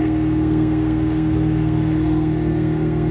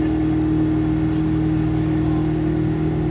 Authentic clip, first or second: second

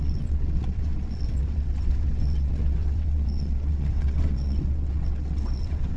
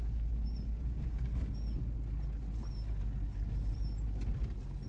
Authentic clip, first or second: second